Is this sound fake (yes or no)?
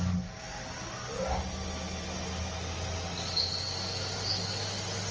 no